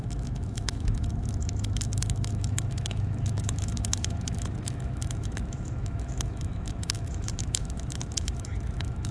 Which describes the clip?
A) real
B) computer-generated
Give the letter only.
B